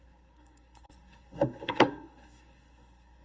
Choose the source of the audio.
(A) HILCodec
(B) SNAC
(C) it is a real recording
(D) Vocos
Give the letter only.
B